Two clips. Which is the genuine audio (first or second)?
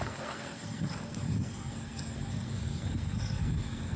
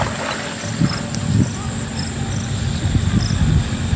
second